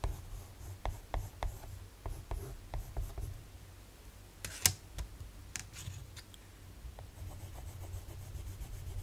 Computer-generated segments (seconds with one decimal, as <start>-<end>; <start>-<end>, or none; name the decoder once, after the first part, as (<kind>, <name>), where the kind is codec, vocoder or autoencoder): none